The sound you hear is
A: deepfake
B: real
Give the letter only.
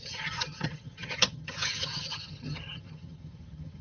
A